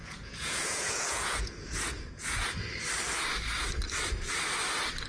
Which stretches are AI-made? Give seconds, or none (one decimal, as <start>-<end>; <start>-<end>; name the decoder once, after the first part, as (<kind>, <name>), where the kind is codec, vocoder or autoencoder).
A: 0.0-2.5 (vocoder, Vocos)